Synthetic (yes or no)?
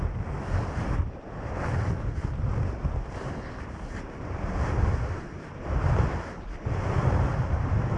no